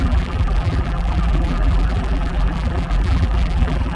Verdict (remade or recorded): remade